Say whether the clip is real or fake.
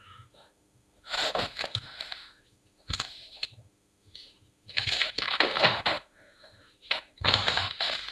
fake